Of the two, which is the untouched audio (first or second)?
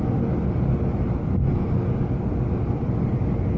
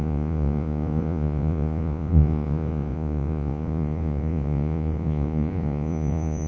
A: first